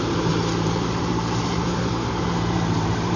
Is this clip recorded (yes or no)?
no